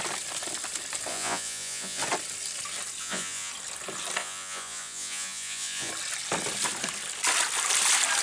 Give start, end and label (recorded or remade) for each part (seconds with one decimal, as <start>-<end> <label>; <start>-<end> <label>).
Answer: 0.0-1.1 recorded; 1.1-2.0 remade; 2.0-3.0 recorded; 3.0-3.5 remade; 3.5-4.2 recorded; 4.2-5.9 remade; 5.9-8.2 recorded